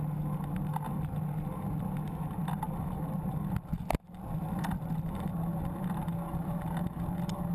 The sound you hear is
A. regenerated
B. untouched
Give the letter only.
B